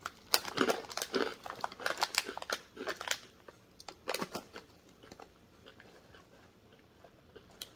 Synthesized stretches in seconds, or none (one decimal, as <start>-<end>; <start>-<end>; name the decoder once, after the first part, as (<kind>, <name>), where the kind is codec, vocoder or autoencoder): 6.7-7.8 (vocoder, BigVGAN v2)